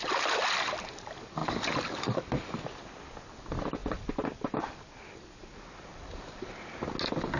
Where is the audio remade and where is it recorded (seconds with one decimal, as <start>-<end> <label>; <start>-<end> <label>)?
0.0-7.4 recorded